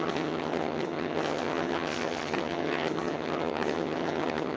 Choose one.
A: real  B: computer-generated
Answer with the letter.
B